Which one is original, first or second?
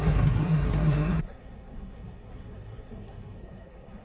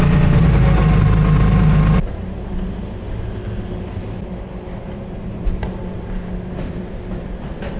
second